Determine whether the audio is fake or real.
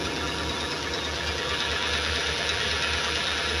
fake